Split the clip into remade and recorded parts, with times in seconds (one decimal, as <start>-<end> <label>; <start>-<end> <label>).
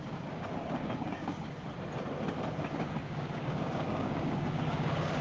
0.0-1.7 remade; 1.7-2.5 recorded; 2.5-5.2 remade